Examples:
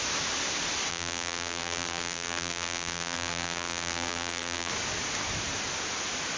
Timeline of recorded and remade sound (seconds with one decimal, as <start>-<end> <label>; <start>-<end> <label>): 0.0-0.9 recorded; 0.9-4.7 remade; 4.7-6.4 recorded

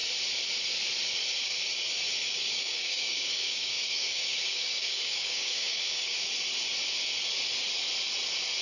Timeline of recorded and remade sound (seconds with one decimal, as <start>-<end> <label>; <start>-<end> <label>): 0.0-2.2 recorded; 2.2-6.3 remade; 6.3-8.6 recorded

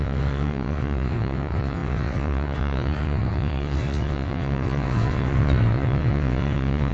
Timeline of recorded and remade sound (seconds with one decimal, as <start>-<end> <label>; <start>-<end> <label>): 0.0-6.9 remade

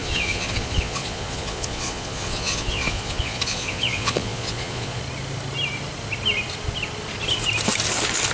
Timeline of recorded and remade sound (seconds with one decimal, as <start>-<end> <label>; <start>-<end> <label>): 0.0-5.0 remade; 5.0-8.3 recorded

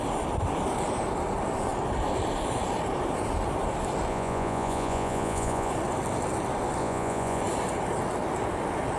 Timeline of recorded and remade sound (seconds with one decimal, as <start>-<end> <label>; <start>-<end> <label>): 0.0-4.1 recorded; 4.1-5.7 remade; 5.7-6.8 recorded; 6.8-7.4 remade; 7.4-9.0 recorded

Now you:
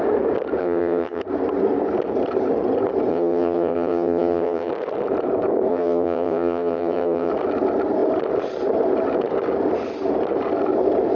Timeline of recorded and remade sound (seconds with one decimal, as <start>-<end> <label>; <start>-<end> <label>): 0.0-0.6 recorded; 0.6-1.2 remade; 1.2-3.1 recorded; 3.1-4.7 remade; 4.7-5.7 recorded; 5.7-7.3 remade; 7.3-11.2 recorded

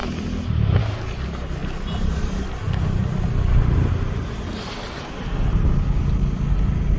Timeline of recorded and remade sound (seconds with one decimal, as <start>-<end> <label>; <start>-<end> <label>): 0.0-7.0 recorded

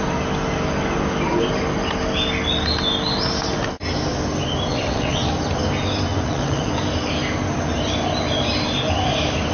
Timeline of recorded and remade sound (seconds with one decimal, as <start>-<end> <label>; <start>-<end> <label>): 0.0-4.7 recorded; 4.7-5.3 remade; 5.3-6.1 recorded; 6.1-6.7 remade; 6.7-9.5 recorded